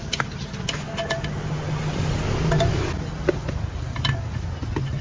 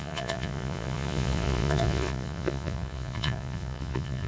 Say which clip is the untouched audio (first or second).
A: first